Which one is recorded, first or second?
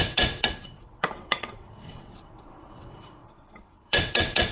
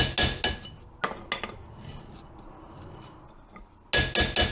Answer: second